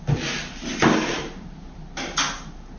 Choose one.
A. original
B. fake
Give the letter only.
A